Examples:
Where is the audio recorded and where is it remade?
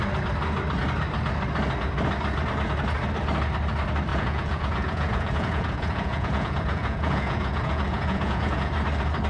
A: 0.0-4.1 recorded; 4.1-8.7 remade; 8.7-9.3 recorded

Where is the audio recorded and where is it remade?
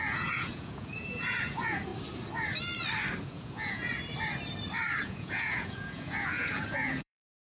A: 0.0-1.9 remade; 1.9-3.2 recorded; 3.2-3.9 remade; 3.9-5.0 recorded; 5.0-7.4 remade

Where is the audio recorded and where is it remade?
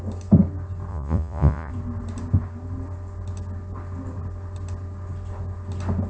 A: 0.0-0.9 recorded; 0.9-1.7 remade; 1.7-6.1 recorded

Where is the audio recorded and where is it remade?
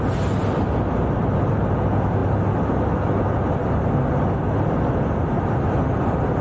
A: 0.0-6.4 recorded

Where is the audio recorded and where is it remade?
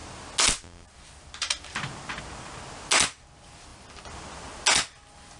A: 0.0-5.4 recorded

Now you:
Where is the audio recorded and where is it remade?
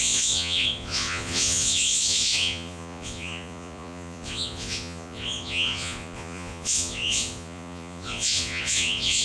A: 0.0-9.2 remade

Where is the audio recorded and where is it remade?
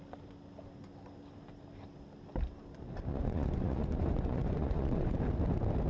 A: 0.0-3.1 recorded; 3.1-5.2 remade; 5.2-5.9 recorded